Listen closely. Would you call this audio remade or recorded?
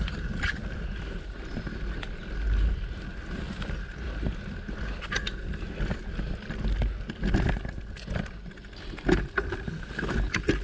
recorded